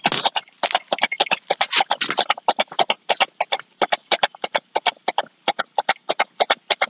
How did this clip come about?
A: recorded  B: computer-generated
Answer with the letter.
A